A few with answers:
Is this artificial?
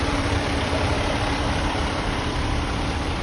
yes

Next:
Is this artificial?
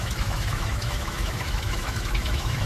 yes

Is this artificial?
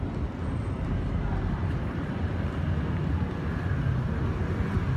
no